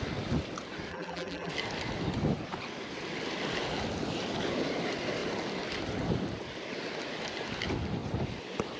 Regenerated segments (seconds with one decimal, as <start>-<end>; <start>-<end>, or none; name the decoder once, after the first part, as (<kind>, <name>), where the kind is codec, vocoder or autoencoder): 0.9-1.5 (vocoder, BigVGAN v2)

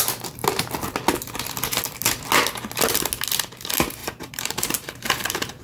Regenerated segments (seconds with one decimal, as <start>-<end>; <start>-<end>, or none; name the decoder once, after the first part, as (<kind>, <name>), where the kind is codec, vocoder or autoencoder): 4.0-5.6 (vocoder, BigVGAN v2)

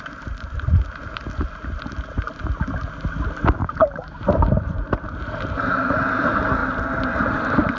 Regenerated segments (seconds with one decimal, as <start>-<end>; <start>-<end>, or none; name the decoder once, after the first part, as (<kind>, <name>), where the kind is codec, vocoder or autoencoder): 0.0-1.2 (vocoder, BigVGAN v2); 4.1-6.6; 7.3-7.8

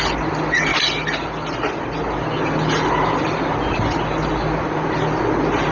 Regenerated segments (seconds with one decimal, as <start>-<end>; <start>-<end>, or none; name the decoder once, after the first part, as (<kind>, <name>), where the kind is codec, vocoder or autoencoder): none

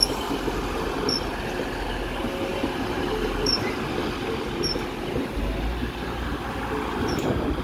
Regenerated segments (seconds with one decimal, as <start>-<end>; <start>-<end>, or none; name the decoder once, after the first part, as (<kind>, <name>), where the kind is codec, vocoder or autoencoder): none